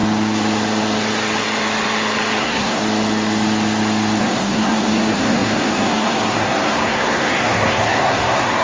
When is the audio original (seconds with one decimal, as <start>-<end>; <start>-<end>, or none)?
0.0-2.4; 2.8-4.2